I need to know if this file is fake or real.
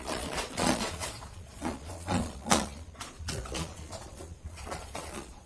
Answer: fake